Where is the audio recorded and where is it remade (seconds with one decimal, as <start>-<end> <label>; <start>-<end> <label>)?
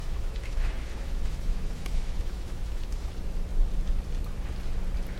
0.0-3.1 remade; 3.1-5.2 recorded